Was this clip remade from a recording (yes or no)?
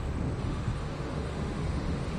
yes